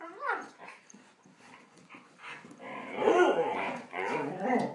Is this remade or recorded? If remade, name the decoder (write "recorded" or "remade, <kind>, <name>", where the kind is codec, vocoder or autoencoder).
remade, vocoder, Vocos